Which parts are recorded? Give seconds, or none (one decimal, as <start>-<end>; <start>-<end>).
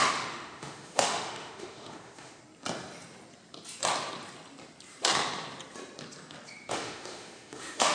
2.4-6.7